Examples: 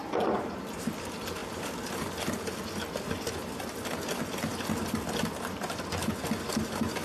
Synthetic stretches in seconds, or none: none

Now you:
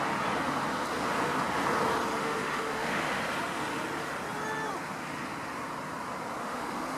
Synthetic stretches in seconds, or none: 2.2-3.2 (autoencoder, DAC-VAE); 6.4-7.0